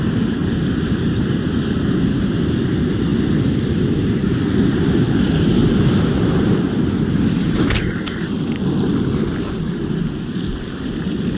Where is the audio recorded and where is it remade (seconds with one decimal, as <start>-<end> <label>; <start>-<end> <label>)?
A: 0.0-11.4 recorded